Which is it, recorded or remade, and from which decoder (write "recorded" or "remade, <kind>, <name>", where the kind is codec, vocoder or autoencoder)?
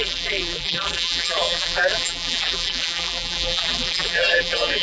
remade, vocoder, BigVGAN v2